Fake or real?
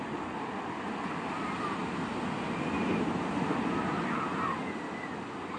real